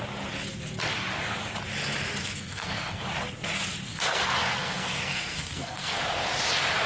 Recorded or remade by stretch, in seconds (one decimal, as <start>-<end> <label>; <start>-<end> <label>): 0.0-2.2 recorded; 2.2-3.0 remade; 3.0-3.9 recorded; 3.9-6.0 remade; 6.0-6.9 recorded